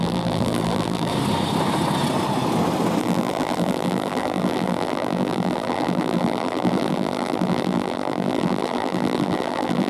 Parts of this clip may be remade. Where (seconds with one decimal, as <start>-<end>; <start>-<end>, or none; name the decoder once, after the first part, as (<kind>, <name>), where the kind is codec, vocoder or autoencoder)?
0.0-1.1 (vocoder, BigVGAN v2); 3.0-9.9

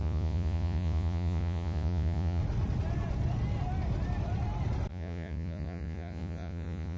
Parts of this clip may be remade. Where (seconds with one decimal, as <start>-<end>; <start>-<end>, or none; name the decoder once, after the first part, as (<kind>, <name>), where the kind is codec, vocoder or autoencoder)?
0.0-2.4 (vocoder, Vocos); 4.9-7.0

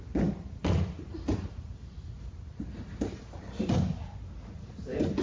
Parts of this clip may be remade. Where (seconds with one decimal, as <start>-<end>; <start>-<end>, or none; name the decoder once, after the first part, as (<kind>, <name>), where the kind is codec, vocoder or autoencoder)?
none

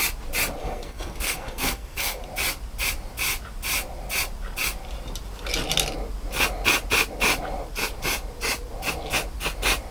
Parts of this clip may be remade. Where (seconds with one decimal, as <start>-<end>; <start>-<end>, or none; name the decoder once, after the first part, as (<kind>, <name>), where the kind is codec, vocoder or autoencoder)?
0.6-2.2 (codec, SNAC)

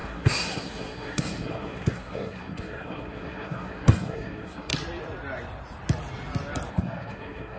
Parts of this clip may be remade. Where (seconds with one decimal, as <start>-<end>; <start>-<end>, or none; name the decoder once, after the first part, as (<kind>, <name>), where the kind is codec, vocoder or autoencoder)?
0.0-4.7 (codec, SNAC); 6.7-7.6

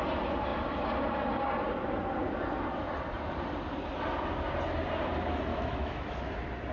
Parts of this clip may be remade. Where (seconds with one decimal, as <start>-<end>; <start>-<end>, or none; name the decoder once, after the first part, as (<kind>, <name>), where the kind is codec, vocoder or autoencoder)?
5.5-6.3 (autoencoder, DAC-VAE)

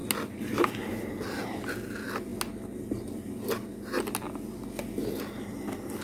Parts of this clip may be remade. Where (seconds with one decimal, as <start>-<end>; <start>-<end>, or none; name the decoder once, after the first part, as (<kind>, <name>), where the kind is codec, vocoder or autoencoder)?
none